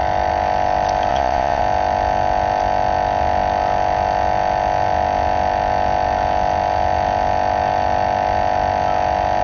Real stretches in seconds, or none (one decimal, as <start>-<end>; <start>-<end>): 0.0-1.1; 1.6-9.4